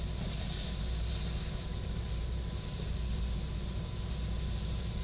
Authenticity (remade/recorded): remade